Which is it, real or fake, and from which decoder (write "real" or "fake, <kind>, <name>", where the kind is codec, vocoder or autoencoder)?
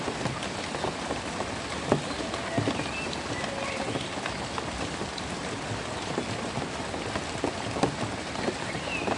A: real